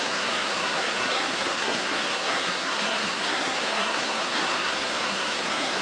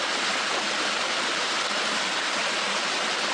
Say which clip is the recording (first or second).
second